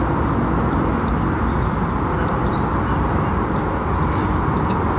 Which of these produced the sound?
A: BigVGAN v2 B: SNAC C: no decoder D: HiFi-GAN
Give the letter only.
C